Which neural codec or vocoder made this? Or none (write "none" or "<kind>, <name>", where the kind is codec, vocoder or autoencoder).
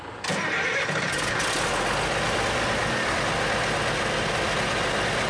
none